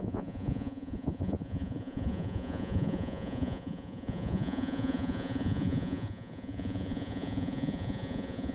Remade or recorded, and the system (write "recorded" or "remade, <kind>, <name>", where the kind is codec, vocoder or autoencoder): remade, vocoder, Vocos